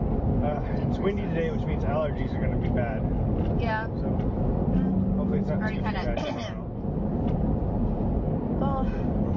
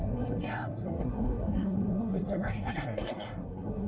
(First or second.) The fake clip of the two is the second